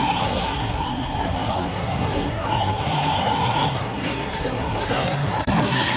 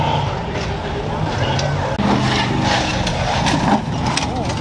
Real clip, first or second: second